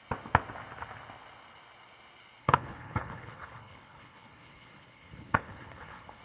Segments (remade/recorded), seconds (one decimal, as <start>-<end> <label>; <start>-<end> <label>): 0.0-2.4 recorded; 2.4-6.2 remade